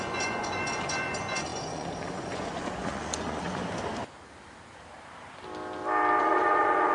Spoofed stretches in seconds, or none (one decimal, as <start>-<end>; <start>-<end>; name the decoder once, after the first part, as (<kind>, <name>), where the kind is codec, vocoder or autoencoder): 0.0-3.6 (vocoder, Vocos); 6.2-6.9